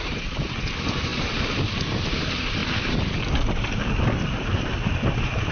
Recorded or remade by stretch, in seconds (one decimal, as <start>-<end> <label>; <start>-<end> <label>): 0.0-2.6 remade; 2.6-3.8 recorded; 3.8-5.5 remade